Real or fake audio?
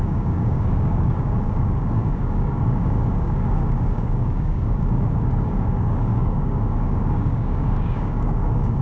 fake